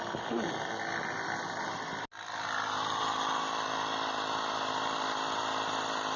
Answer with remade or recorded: recorded